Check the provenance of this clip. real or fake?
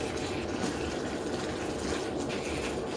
real